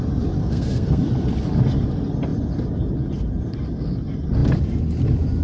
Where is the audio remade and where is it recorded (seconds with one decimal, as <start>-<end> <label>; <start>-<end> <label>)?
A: 0.0-0.4 recorded; 0.4-1.0 remade; 1.0-5.4 recorded